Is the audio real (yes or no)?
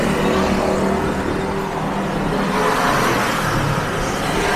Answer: yes